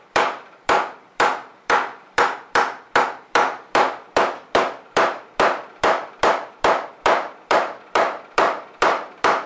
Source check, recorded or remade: remade